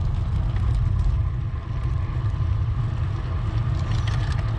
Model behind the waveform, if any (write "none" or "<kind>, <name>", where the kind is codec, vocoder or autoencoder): none